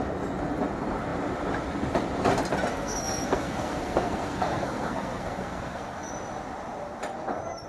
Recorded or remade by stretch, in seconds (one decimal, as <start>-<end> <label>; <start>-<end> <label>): 0.0-2.7 recorded; 2.7-6.1 remade; 6.1-7.7 recorded

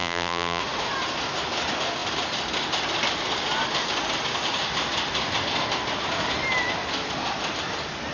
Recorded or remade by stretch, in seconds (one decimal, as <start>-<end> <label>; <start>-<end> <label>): 0.0-0.6 remade; 0.6-8.1 recorded